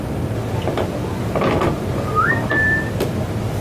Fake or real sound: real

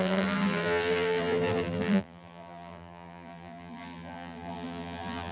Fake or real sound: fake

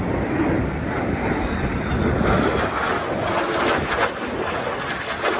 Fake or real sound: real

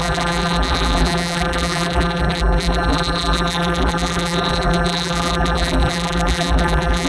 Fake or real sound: fake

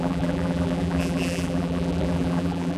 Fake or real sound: fake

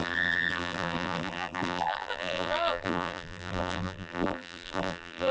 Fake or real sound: fake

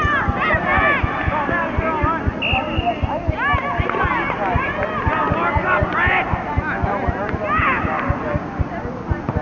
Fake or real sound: real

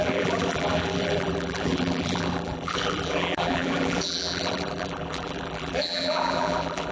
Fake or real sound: fake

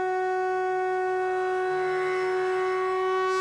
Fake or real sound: real